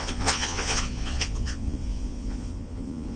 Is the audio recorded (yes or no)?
no